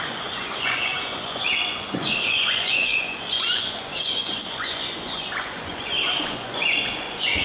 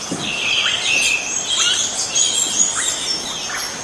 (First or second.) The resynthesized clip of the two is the first